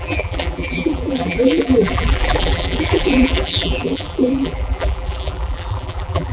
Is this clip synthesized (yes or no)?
yes